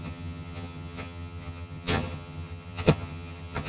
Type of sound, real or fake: fake